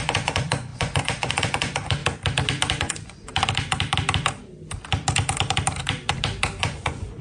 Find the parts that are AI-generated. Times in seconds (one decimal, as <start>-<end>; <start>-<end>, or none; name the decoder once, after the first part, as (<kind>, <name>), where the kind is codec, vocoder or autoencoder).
0.0-2.0 (vocoder, Vocos); 2.8-3.3; 6.6-7.2